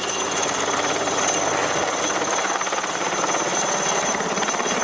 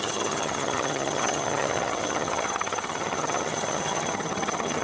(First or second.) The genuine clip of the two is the first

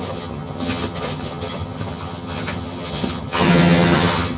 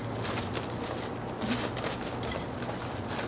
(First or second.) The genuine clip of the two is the second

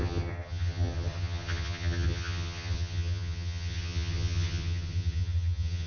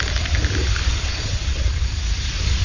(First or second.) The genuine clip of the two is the second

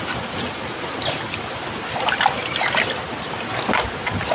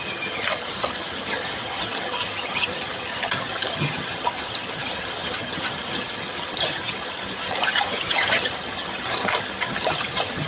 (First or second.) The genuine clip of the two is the first